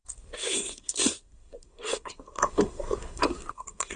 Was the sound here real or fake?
fake